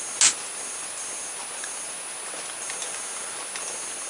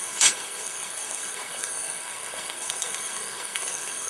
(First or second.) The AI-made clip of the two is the second